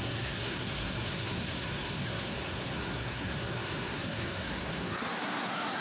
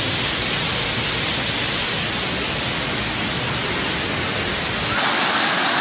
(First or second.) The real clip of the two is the second